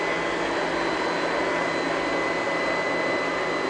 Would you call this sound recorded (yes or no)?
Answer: yes